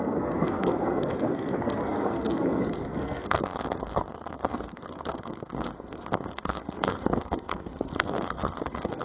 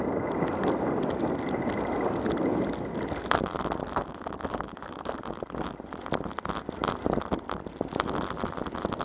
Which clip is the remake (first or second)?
first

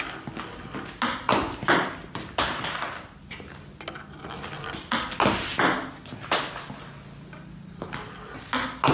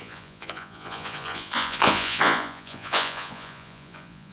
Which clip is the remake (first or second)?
second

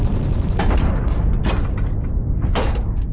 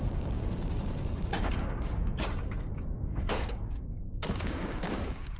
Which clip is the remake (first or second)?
second